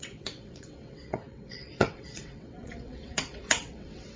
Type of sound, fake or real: fake